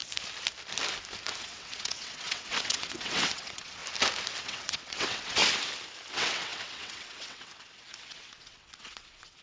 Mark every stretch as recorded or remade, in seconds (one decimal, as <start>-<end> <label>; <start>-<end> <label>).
0.0-1.4 recorded; 1.4-3.8 remade; 3.8-4.4 recorded; 4.4-5.4 remade; 5.4-6.1 recorded; 6.1-9.4 remade